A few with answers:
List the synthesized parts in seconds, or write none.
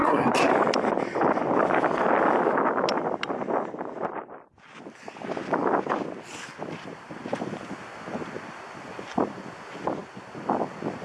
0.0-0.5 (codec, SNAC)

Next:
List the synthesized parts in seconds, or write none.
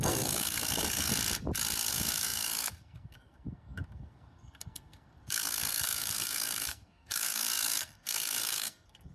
0.0-1.1 (codec, SNAC); 1.9-9.1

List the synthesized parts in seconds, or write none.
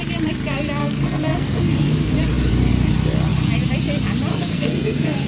0.8-2.1 (codec, SNAC); 4.3-5.3